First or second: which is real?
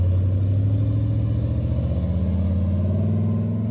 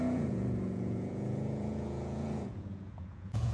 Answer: first